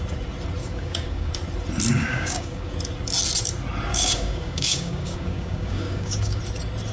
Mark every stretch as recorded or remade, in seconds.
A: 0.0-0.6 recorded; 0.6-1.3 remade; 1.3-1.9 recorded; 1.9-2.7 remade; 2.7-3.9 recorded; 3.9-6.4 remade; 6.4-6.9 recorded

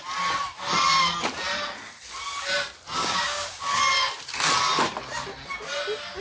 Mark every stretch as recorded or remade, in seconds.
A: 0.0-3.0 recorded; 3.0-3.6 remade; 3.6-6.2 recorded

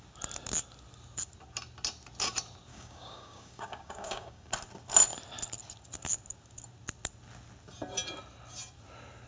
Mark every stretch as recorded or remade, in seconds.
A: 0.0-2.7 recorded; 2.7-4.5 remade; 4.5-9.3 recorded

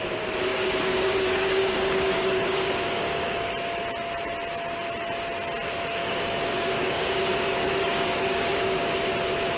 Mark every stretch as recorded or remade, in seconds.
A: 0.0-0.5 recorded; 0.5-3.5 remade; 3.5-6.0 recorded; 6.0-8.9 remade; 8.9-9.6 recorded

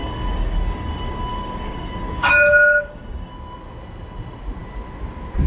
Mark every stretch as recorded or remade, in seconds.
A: 0.0-3.3 remade; 3.3-5.5 recorded

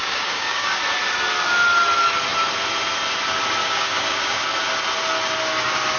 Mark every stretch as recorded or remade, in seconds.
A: 0.0-0.8 remade; 0.8-3.6 recorded; 3.6-4.4 remade; 4.4-6.0 recorded